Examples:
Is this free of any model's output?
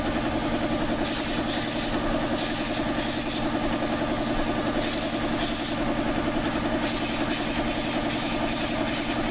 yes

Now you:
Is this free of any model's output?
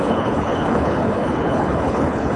no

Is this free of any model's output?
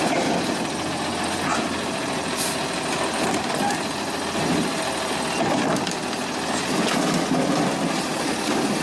yes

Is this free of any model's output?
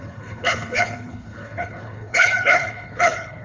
no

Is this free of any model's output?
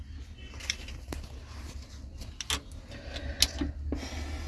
yes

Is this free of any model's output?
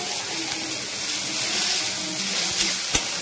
yes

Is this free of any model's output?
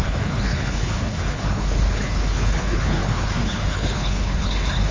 no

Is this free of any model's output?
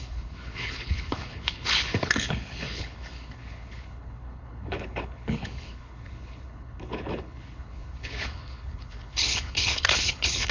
no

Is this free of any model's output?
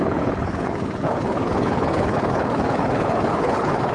no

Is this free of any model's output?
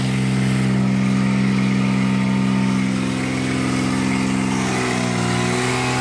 yes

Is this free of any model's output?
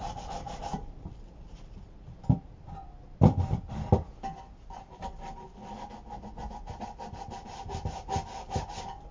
yes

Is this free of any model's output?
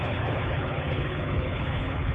no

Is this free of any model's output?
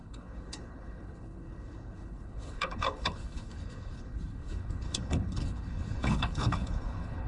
no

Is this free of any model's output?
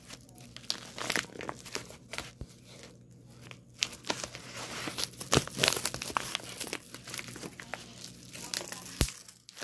yes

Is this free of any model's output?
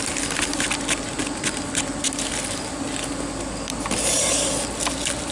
yes